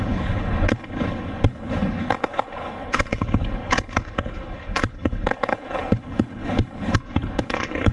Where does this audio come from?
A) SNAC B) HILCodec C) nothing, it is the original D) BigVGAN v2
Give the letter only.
B